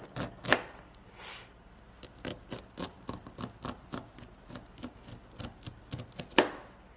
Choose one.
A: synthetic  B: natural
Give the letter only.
B